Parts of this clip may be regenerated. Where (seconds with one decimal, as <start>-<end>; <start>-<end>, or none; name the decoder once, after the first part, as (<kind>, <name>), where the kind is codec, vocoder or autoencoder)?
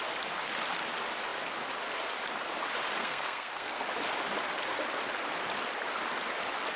3.0-3.8 (codec, SNAC)